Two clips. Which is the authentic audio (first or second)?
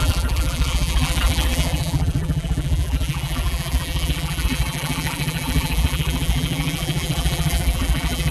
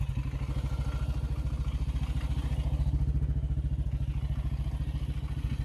second